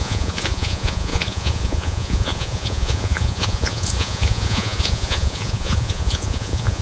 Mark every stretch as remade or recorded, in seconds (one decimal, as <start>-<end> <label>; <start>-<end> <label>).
0.0-6.8 remade